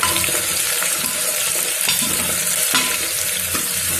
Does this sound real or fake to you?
real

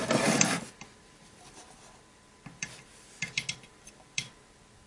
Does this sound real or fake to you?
fake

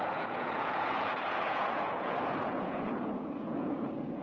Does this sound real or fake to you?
fake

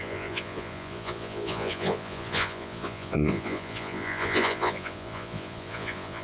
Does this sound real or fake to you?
fake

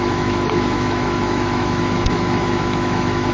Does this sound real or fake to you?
fake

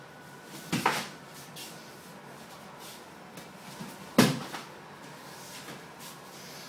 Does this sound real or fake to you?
real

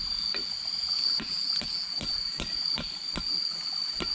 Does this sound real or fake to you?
real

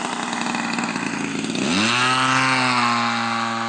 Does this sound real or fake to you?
real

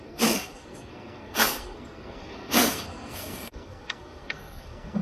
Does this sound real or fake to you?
fake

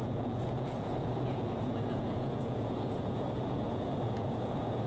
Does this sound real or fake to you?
fake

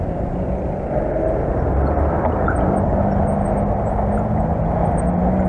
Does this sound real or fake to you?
real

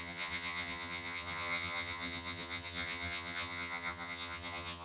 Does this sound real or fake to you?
fake